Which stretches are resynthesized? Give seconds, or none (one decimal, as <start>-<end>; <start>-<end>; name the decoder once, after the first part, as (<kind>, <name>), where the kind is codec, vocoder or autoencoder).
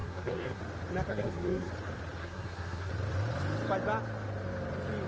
0.0-0.6 (codec, SNAC); 1.1-1.7; 2.2-2.9